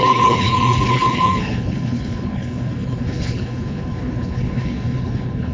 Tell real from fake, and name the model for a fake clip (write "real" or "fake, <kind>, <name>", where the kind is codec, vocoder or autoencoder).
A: fake, codec, HILCodec